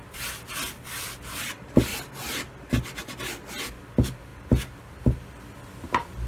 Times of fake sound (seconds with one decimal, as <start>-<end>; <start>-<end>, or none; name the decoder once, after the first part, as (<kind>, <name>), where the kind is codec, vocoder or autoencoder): none